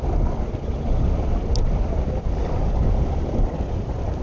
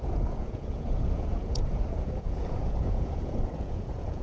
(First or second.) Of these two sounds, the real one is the first